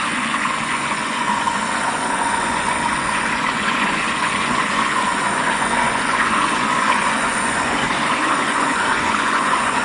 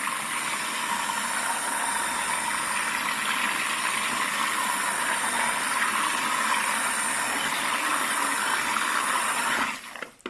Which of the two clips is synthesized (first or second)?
first